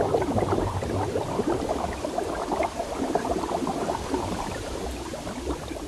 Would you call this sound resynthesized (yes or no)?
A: no